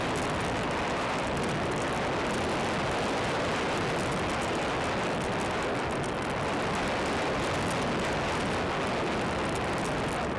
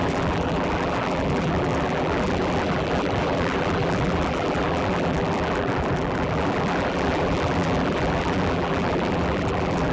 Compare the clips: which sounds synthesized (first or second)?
second